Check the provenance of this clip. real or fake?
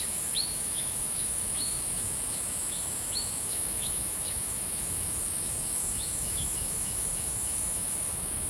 fake